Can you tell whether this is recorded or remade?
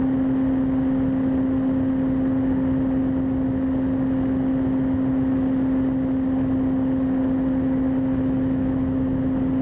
recorded